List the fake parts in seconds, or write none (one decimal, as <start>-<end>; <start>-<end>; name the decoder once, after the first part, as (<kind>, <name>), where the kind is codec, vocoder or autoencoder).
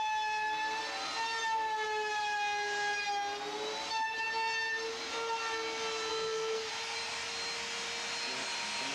6.1-6.7 (codec, SNAC)